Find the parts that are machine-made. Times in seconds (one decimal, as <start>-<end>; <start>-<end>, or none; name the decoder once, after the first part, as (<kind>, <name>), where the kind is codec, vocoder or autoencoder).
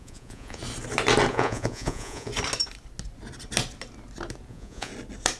0.0-0.6 (vocoder, Vocos); 1.3-2.3; 4.5-4.9